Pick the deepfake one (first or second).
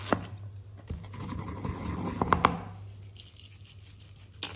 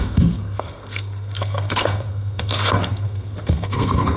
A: second